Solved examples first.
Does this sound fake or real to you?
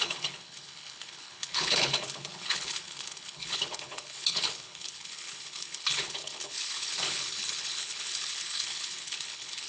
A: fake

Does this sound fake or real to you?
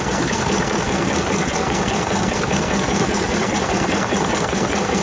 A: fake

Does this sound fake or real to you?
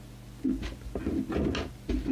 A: real